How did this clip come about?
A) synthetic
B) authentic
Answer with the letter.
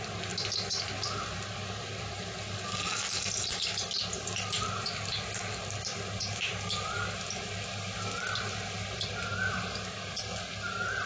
B